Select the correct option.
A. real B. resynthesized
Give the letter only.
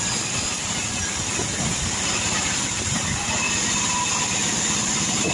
A